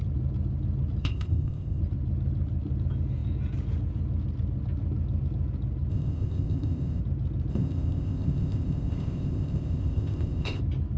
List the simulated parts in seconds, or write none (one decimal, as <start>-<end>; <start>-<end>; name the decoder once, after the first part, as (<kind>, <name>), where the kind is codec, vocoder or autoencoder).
1.0-1.8 (codec, ZipCodec); 5.9-7.0; 7.5-10.6